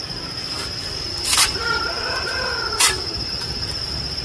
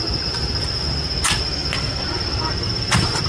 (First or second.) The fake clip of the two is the first